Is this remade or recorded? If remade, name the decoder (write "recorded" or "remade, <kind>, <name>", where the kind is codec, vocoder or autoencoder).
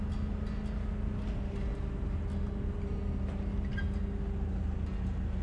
recorded